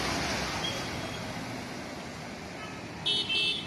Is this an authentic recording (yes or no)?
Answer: yes